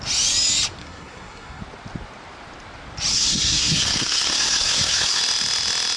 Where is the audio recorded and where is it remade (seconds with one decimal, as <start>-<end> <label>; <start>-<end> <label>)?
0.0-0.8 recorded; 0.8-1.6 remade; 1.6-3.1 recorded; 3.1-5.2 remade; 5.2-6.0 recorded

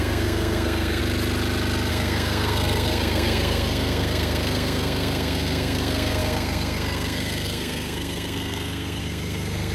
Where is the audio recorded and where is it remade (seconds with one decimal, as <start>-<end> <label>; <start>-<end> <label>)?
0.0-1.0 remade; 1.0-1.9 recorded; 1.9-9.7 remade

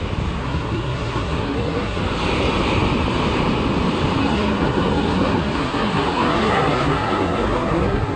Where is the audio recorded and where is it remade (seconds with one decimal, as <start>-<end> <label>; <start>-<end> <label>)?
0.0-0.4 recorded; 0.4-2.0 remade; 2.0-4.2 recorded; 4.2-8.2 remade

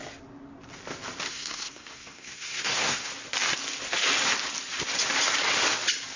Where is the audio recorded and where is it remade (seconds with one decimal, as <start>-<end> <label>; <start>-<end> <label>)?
0.0-1.3 recorded; 1.3-3.1 remade; 3.1-6.2 recorded

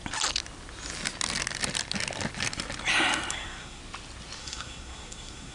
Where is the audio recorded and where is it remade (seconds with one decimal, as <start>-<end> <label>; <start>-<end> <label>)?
0.0-3.3 recorded; 3.3-3.8 remade; 3.8-4.4 recorded; 4.4-5.5 remade

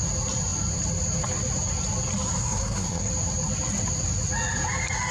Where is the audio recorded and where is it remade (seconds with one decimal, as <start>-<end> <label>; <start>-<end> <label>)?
0.0-2.4 recorded; 2.4-3.1 remade; 3.1-5.1 recorded

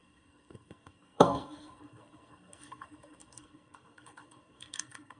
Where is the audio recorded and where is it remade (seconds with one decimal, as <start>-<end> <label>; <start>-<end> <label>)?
0.0-5.2 remade